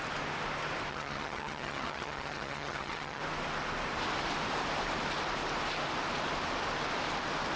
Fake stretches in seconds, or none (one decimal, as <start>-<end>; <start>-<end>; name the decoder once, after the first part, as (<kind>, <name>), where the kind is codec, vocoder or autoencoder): 0.9-3.2 (vocoder, HiFi-GAN)